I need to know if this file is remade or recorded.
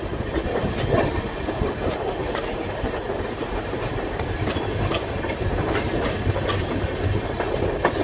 remade